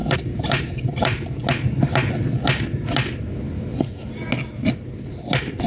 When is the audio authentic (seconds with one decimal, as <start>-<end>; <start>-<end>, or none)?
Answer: 0.6-5.7